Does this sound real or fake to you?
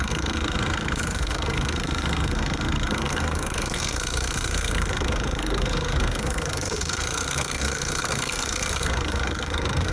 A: fake